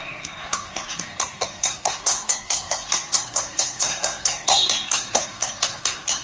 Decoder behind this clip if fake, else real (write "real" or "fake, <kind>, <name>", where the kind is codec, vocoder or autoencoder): fake, codec, SNAC